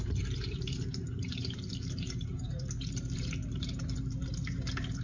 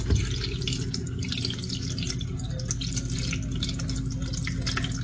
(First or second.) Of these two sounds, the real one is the second